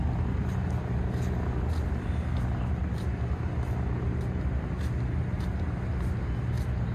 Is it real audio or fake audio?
real